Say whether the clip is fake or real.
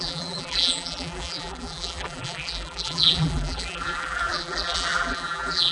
fake